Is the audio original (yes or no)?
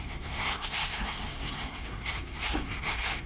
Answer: no